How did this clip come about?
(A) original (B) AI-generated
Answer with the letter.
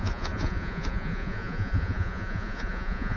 B